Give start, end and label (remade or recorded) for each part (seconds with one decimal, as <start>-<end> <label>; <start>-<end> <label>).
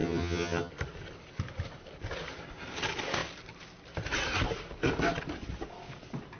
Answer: 0.0-0.7 remade; 0.7-6.4 recorded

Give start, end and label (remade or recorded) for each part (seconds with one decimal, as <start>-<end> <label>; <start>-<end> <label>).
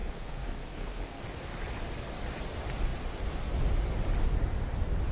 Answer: 0.0-1.2 remade; 1.2-5.1 recorded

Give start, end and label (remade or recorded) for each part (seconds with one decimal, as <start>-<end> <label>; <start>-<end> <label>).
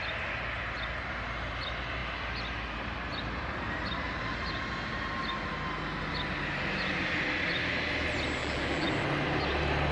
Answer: 0.0-8.4 recorded; 8.4-8.9 remade; 8.9-9.9 recorded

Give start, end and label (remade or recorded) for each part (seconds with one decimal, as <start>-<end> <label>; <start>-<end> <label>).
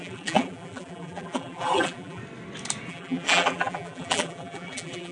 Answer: 0.0-2.2 remade; 2.2-2.9 recorded; 2.9-5.1 remade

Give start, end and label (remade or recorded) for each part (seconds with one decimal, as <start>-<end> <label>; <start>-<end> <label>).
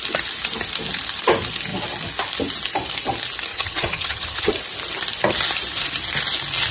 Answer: 0.0-3.5 recorded; 3.5-4.5 remade; 4.5-6.7 recorded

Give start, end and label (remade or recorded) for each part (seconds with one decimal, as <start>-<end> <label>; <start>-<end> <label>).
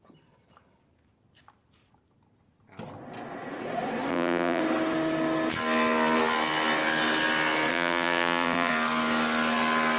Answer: 0.0-4.1 recorded; 4.1-4.6 remade; 4.6-7.7 recorded; 7.7-8.7 remade; 8.7-10.0 recorded